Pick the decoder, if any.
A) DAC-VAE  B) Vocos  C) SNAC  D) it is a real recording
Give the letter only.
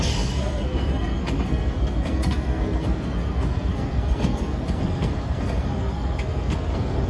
C